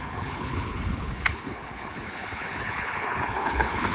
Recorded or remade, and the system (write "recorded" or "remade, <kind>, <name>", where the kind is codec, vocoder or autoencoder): remade, codec, HILCodec